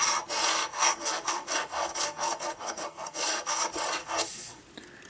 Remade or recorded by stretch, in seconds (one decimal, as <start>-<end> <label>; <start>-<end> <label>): 0.0-0.5 recorded; 0.5-3.6 remade; 3.6-4.0 recorded; 4.0-4.6 remade; 4.6-5.1 recorded